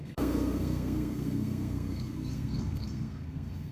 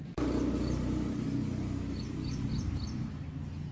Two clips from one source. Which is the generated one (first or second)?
first